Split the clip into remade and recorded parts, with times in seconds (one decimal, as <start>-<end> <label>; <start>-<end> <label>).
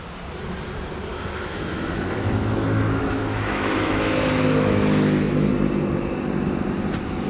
0.0-1.1 recorded; 1.1-5.5 remade; 5.5-7.3 recorded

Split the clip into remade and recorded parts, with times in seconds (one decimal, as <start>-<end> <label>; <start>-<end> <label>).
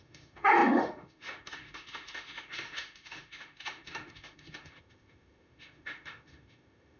0.0-7.0 remade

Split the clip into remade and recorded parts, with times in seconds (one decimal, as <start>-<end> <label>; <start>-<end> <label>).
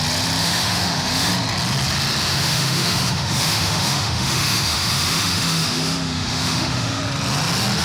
0.0-0.4 recorded; 0.4-1.3 remade; 1.3-2.3 recorded; 2.3-7.0 remade; 7.0-7.8 recorded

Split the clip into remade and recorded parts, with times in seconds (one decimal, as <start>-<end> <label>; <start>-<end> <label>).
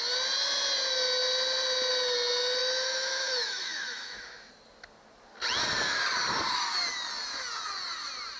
0.0-2.6 recorded; 2.6-4.5 remade; 4.5-8.4 recorded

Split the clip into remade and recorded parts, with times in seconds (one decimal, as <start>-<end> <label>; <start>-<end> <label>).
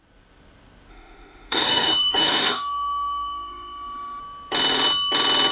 0.0-0.9 recorded; 0.9-4.2 remade; 4.2-5.5 recorded